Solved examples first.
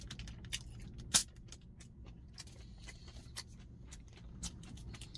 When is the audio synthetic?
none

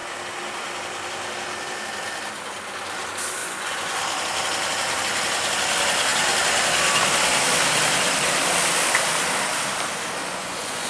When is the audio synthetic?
3.4-4.0 (vocoder, Vocos); 10.2-10.9

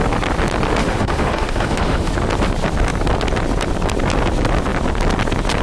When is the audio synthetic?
0.8-2.1 (autoencoder, DAC-VAE)

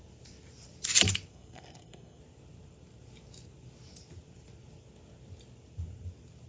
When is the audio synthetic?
1.3-2.2 (codec, SNAC)

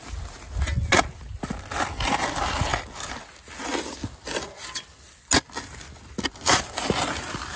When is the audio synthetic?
none

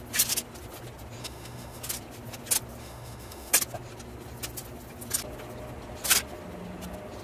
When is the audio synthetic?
1.2-1.8 (autoencoder, DAC-VAE); 2.8-3.5